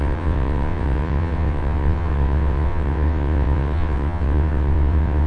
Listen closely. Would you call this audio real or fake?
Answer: fake